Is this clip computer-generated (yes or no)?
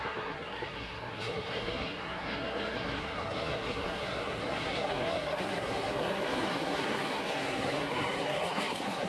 yes